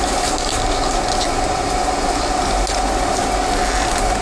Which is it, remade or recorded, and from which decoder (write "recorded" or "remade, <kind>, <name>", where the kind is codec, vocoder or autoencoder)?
recorded